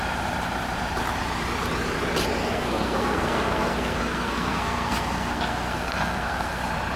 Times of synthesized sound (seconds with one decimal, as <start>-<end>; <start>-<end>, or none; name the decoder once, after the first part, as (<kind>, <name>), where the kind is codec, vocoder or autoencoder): 2.4-6.6 (codec, SNAC)